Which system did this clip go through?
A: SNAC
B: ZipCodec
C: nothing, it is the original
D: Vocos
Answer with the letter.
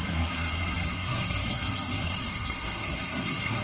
A